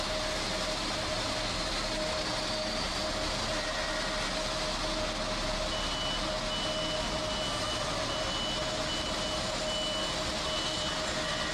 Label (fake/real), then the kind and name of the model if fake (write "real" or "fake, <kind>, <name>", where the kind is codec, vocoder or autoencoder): real